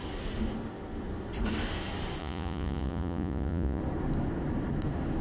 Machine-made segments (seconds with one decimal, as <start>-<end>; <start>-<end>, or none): 2.2-3.8

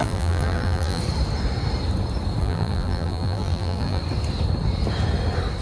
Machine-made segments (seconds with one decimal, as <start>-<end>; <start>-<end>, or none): 0.0-1.0; 2.4-4.0

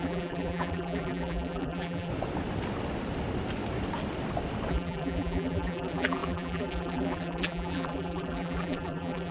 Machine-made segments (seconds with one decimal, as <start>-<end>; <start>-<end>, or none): 0.0-2.1; 4.7-9.3

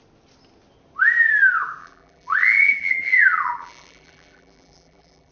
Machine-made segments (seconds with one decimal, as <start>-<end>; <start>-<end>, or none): 1.8-5.3

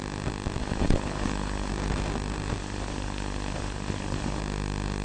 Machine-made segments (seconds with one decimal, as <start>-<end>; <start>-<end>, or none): 0.6-1.7; 2.6-4.4

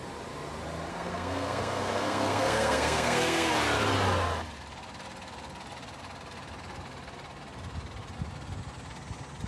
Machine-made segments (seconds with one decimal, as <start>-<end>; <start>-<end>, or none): 0.9-3.5

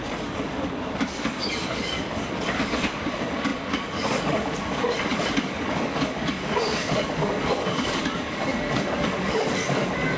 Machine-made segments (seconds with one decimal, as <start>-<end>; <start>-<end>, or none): 0.0-10.2